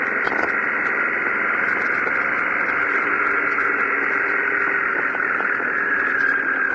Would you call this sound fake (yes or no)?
no